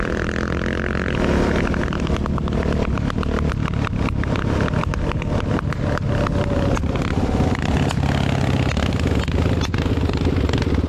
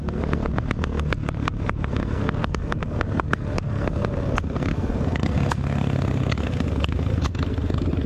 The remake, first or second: second